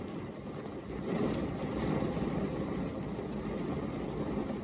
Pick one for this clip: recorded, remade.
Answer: recorded